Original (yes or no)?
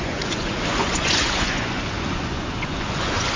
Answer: no